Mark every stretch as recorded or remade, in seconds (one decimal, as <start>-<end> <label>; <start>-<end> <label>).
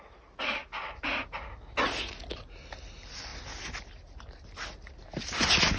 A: 0.0-5.8 recorded